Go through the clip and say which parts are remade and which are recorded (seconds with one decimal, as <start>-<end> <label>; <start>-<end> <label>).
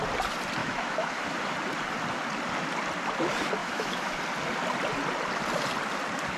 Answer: 0.0-0.6 recorded; 0.6-1.2 remade; 1.2-3.6 recorded; 3.6-4.2 remade; 4.2-6.4 recorded